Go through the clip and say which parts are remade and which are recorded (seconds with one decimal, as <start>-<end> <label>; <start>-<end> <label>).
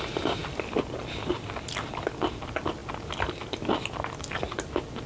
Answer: 0.0-5.1 recorded